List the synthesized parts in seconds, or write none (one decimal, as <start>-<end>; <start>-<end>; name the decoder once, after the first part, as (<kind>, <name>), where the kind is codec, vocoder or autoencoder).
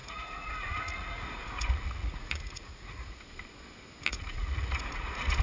0.0-3.2 (vocoder, Vocos); 4.1-5.4